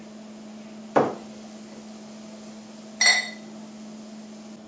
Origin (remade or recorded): recorded